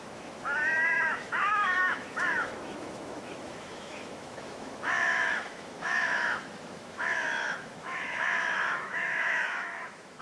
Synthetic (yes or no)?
yes